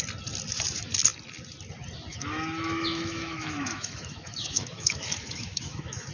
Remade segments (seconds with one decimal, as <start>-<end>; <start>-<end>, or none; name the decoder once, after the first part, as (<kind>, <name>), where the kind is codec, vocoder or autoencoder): 2.1-6.1 (autoencoder, DAC-VAE)